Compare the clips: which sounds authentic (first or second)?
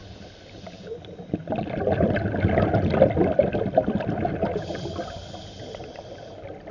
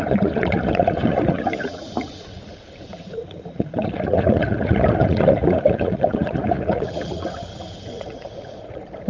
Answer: first